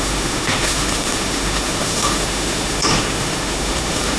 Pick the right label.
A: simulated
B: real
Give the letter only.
A